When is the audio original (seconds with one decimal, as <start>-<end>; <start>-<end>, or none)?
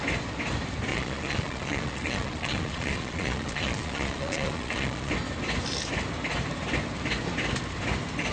0.0-0.9; 5.1-8.3